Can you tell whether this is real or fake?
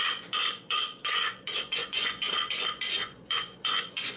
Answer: fake